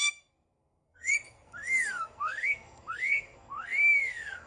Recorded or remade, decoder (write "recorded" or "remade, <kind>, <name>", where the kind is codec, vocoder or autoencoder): remade, codec, SNAC